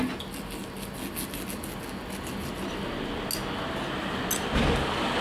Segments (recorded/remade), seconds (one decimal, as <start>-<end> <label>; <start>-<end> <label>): 0.0-5.2 recorded